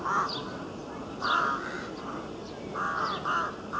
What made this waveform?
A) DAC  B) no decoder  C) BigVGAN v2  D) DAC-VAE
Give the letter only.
B